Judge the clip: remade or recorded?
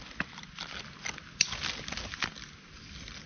recorded